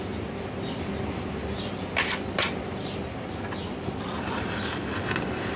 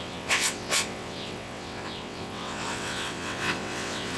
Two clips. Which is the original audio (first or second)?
first